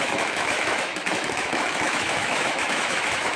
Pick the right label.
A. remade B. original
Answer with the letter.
A